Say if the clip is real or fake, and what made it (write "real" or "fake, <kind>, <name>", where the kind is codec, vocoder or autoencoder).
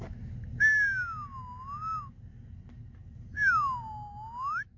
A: real